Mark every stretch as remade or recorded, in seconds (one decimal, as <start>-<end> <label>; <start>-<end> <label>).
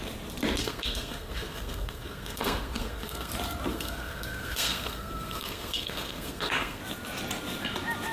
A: 0.0-0.6 recorded; 0.6-3.3 remade; 3.3-3.7 recorded; 3.7-6.8 remade; 6.8-8.1 recorded